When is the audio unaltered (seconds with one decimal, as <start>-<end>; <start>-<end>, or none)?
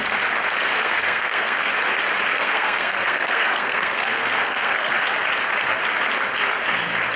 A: 0.0-0.8; 1.7-2.3; 4.9-7.2